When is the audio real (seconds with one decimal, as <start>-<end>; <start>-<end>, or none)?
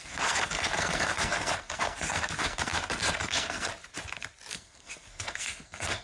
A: 3.7-4.5